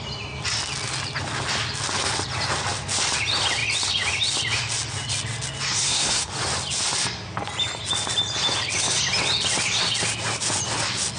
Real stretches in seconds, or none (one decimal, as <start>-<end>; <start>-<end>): 0.0-5.7; 6.3-11.2